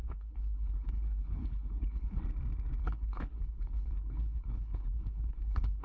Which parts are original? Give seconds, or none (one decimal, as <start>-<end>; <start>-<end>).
2.2-2.8